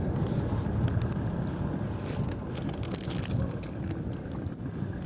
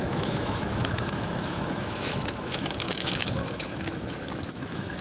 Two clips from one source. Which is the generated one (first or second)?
second